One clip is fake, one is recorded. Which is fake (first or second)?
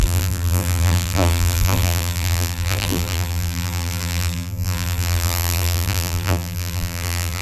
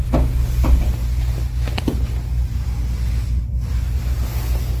first